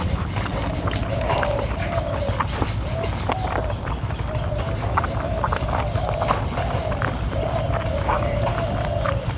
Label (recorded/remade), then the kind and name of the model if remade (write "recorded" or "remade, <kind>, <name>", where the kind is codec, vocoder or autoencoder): recorded